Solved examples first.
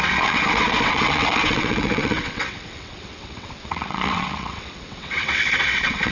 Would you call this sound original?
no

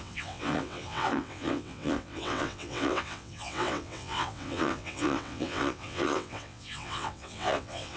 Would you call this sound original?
no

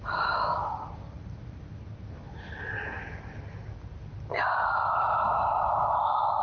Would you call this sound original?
yes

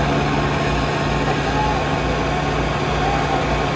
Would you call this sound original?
yes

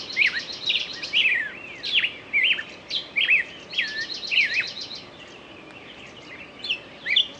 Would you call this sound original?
yes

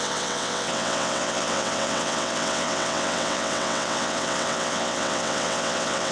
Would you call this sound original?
no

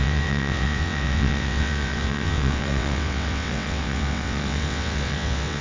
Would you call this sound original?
no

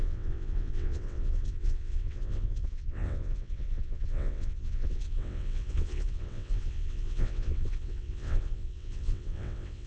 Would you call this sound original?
no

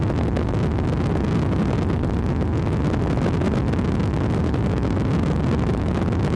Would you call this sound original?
yes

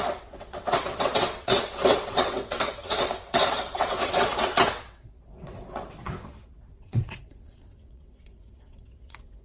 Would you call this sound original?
no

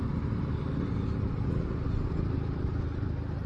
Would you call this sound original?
yes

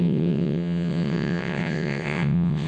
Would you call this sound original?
no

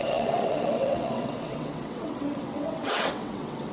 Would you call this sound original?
no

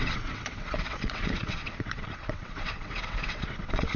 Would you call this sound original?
no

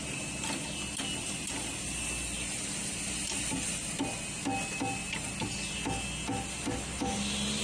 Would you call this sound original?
yes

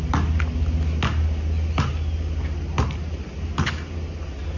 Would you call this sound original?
yes